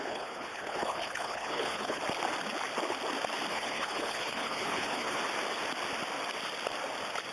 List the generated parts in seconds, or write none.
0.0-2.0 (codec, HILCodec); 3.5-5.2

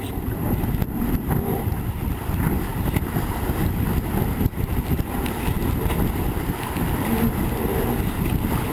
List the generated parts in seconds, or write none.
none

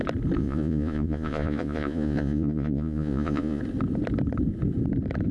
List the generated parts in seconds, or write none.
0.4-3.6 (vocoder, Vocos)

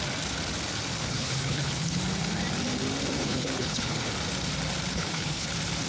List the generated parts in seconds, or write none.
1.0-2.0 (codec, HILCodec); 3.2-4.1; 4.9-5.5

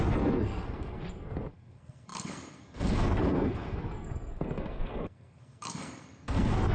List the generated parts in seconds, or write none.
0.0-6.7 (codec, SNAC)

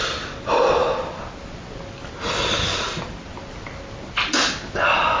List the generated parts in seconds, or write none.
none